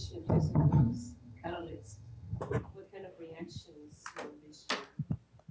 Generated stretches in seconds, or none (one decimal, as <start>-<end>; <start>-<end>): 0.0-2.4